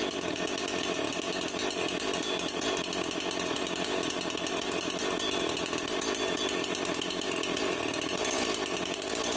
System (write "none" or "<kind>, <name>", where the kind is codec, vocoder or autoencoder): none